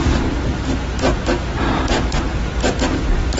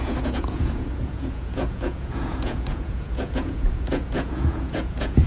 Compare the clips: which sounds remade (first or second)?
second